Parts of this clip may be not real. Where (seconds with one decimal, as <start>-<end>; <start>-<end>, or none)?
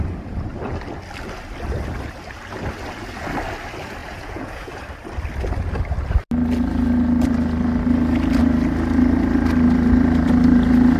4.0-4.7